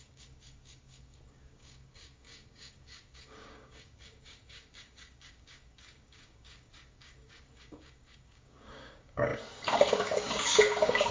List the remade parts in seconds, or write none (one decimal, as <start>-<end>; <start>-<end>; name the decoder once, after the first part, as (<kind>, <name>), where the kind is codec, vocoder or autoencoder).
0.0-11.1 (codec, DAC)

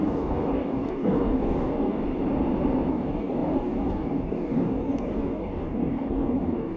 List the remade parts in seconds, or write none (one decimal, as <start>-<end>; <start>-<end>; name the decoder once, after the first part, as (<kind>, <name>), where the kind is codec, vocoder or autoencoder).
0.0-2.0 (codec, DAC); 2.9-6.8

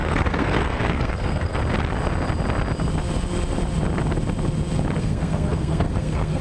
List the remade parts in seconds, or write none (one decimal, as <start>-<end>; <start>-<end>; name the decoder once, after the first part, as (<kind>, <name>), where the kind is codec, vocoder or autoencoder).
0.0-1.6 (codec, SNAC); 5.0-6.4

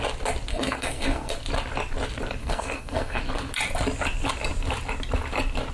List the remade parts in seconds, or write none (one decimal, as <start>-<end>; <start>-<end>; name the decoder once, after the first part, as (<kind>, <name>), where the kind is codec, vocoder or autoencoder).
0.5-1.3 (codec, SNAC); 2.4-3.2